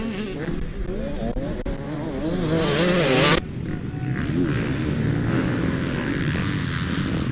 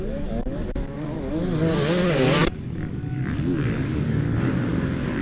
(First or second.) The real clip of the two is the first